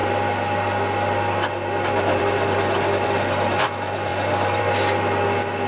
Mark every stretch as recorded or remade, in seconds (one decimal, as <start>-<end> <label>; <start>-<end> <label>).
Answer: 0.0-5.7 recorded